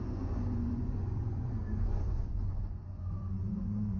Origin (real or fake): fake